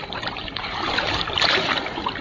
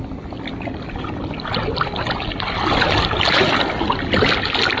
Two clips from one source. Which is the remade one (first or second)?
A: first